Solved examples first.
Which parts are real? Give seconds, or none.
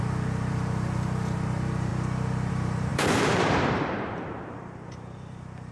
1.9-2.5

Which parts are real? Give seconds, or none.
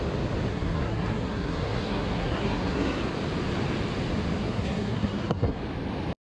0.0-0.5; 3.0-4.4; 5.6-6.3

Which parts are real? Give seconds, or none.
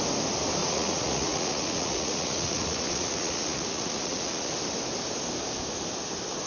0.0-0.6; 4.5-6.5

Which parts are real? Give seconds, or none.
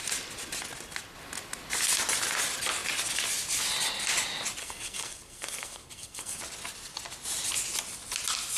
0.0-4.6; 6.4-8.6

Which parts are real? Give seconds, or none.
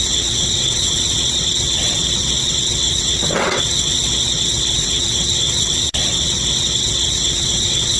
none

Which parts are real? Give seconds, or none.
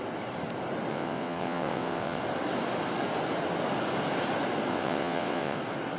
0.0-0.9; 2.2-4.7; 5.6-6.0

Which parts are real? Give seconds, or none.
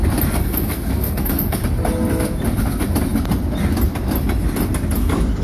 0.0-0.4; 1.6-5.4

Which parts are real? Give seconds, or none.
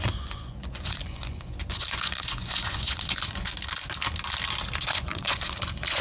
3.5-4.8